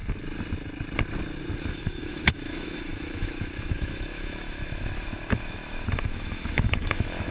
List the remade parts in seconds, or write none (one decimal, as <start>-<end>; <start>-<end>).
1.7-7.3